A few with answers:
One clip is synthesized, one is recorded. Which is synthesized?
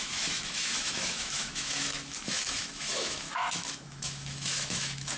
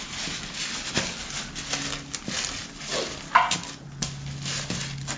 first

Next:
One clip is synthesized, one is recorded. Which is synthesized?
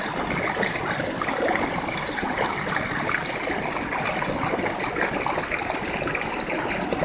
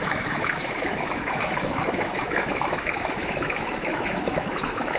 second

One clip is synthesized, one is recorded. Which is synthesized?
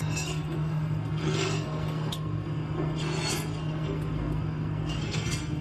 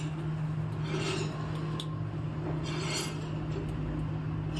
first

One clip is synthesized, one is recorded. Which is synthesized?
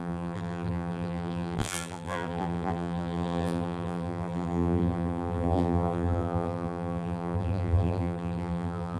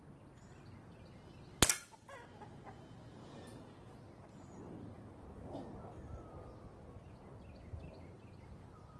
first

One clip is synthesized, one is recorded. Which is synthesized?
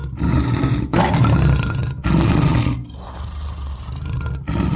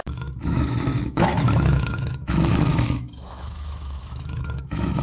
second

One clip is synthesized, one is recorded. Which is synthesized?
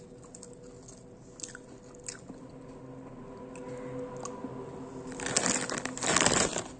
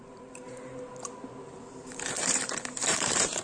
second